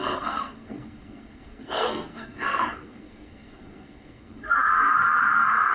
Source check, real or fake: fake